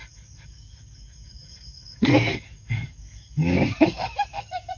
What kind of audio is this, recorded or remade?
remade